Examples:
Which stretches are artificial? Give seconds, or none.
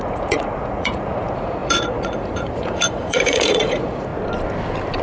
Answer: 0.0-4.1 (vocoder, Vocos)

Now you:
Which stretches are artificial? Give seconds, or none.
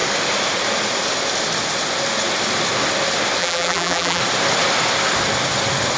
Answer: 3.4-4.2 (vocoder, BigVGAN v2)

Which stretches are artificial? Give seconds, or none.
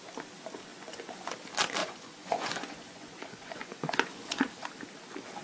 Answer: 0.7-1.3 (vocoder, Vocos); 1.8-4.5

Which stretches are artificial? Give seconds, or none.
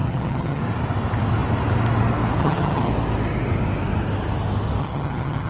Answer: 0.0-0.6 (vocoder, HiFi-GAN); 2.4-2.9; 4.8-5.5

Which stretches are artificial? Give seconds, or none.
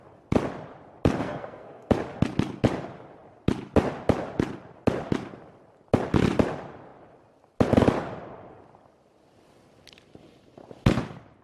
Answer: 1.2-1.9 (codec, SNAC)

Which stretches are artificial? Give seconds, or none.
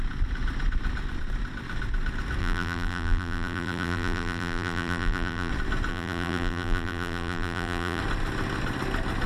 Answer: 2.4-5.5 (vocoder, BigVGAN v2); 5.9-8.0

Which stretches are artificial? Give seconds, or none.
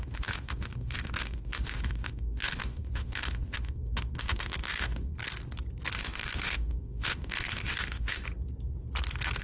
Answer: 0.0-5.1 (autoencoder, DAC-VAE); 5.9-8.2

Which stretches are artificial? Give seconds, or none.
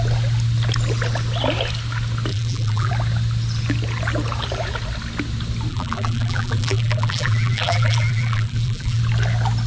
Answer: 2.3-2.9 (vocoder, BigVGAN v2); 5.7-9.0